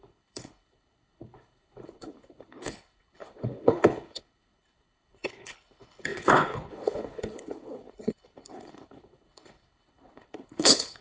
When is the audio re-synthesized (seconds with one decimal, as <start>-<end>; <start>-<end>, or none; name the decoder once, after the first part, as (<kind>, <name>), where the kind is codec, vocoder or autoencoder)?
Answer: 0.0-11.0 (codec, HILCodec)